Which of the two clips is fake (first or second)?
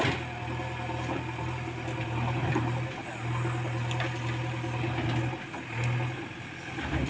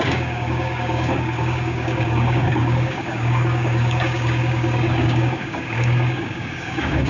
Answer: second